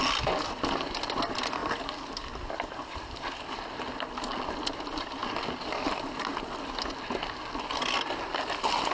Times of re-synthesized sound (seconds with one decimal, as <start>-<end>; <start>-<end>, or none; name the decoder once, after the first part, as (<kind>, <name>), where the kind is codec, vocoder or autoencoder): none